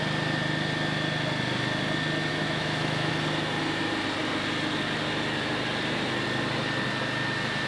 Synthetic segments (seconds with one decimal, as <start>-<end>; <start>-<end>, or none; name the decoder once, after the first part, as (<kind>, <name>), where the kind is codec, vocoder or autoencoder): 2.3-3.1 (autoencoder, DAC-VAE)

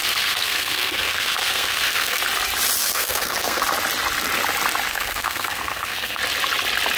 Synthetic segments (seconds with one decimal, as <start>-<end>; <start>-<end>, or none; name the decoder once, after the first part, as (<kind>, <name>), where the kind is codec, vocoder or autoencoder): 0.0-2.2 (codec, SNAC); 2.8-3.6; 4.9-6.2